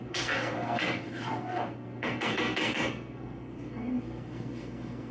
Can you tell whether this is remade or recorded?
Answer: remade